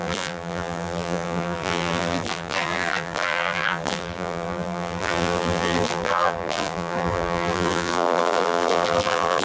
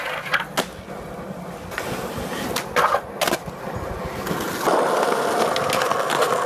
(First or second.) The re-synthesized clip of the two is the first